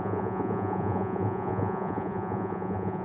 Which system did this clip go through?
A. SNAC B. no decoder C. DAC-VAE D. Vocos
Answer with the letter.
D